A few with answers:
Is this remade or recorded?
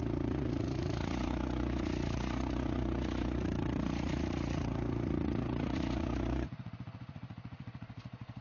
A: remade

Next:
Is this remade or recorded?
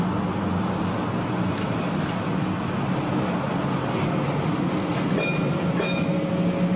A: recorded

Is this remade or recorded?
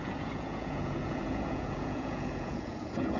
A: remade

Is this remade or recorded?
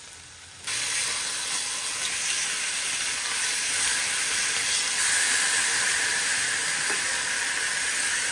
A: recorded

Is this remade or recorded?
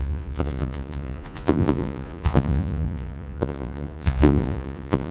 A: remade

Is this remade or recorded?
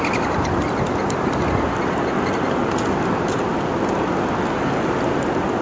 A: recorded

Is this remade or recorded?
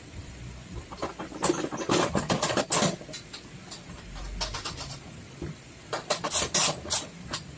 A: recorded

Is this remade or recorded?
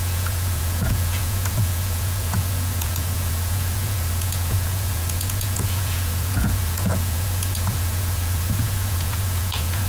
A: remade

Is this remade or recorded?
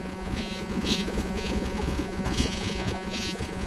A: remade